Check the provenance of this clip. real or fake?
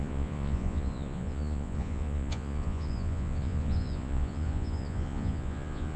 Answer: fake